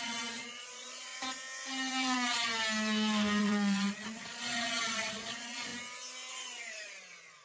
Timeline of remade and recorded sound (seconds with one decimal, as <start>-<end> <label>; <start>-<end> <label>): 0.0-1.1 remade; 1.1-1.9 recorded; 1.9-2.5 remade; 2.5-3.4 recorded; 3.4-5.7 remade; 5.7-6.3 recorded; 6.3-7.4 remade